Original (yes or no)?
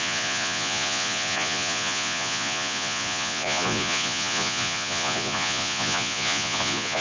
no